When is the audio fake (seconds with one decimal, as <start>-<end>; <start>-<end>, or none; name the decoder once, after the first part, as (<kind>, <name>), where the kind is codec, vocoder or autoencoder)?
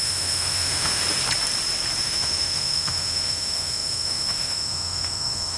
0.0-1.0 (autoencoder, DAC-VAE); 2.0-5.6